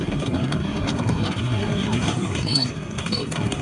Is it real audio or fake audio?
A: fake